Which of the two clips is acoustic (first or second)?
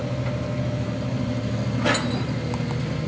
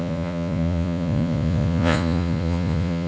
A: first